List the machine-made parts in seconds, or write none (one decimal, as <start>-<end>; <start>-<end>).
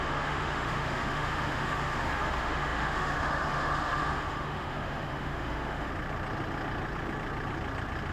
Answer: 0.0-5.9